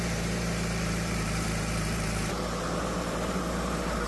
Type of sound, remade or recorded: remade